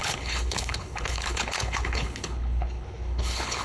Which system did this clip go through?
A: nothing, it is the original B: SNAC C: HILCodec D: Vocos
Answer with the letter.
C